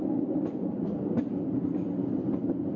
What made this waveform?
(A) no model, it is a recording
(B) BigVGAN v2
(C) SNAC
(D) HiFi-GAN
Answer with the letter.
A